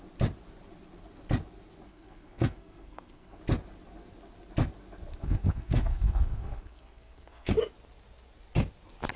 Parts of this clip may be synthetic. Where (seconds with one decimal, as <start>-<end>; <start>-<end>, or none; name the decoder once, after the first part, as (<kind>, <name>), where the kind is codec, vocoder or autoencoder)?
1.9-3.4 (codec, SNAC); 5.2-7.5